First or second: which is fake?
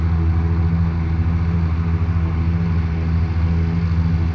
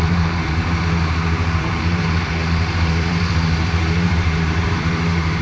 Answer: second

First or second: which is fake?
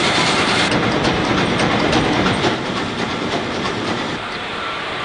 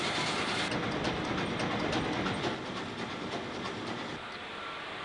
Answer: first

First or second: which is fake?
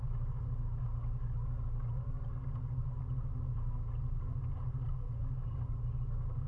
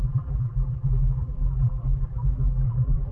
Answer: second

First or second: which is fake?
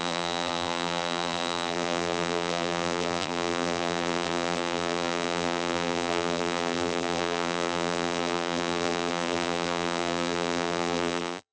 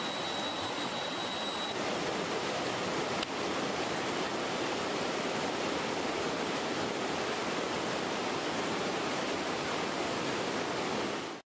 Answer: first